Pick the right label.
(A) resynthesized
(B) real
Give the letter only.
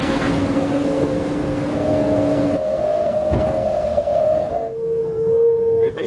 A